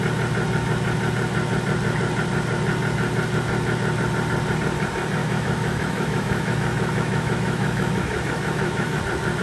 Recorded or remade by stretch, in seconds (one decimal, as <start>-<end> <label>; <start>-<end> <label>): 0.0-5.2 recorded; 5.2-9.0 remade; 9.0-9.4 recorded